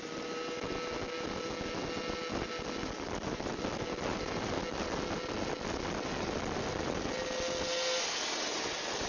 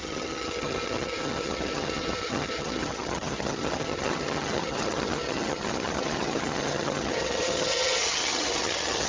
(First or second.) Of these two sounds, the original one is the first